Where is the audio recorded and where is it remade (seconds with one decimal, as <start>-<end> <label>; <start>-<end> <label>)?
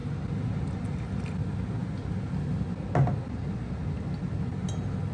0.0-5.1 recorded